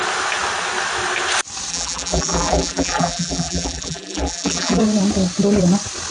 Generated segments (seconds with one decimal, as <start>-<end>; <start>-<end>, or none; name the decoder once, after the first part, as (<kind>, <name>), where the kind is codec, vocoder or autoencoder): 1.7-4.8 (vocoder, BigVGAN v2)